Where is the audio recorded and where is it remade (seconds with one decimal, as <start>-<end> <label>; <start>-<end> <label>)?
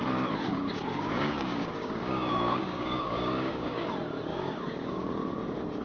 0.0-0.5 recorded; 0.5-3.9 remade; 3.9-4.3 recorded; 4.3-5.1 remade; 5.1-5.8 recorded